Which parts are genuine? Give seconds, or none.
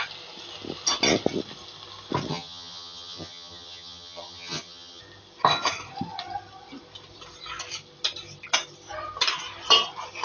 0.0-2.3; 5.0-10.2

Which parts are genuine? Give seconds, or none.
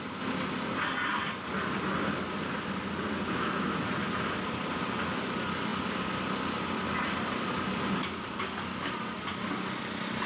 0.0-10.3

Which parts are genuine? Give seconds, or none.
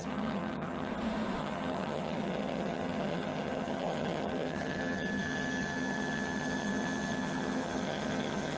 0.9-1.4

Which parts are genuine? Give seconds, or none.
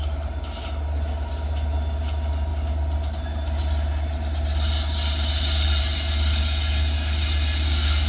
0.0-8.1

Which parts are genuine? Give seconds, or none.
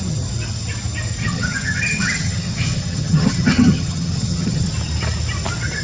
0.0-1.2; 4.7-5.8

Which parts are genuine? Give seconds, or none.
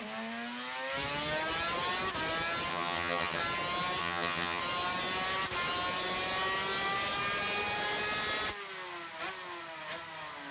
0.0-2.7; 3.4-4.0; 4.6-10.5